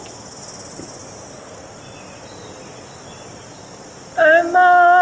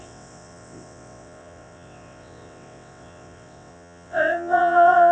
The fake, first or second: second